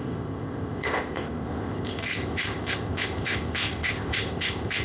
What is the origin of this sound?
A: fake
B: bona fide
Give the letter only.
A